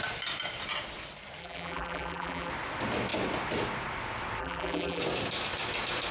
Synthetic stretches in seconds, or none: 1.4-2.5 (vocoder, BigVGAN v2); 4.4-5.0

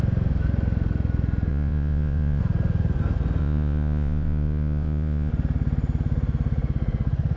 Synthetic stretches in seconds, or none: 1.5-2.4 (vocoder, Vocos); 3.4-5.3

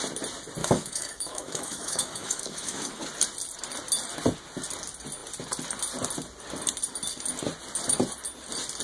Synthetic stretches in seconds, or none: 0.6-3.0 (autoencoder, DAC-VAE)

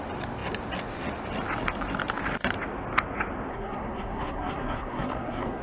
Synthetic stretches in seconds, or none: 3.5-5.6 (codec, SNAC)

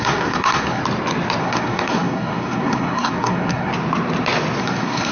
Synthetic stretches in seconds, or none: 0.0-0.8 (codec, SNAC); 1.4-3.7; 4.6-5.1